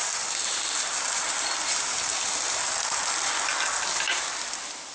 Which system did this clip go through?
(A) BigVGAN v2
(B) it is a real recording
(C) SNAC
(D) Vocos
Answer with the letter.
B